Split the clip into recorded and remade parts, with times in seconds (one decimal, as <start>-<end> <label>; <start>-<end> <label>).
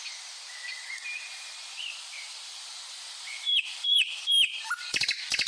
0.0-1.3 recorded; 1.3-4.6 remade; 4.6-5.5 recorded